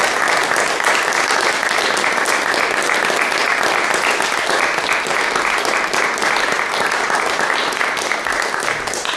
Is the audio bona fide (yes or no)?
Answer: yes